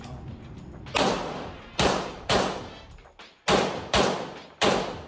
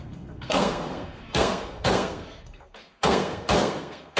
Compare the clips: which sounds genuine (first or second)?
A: first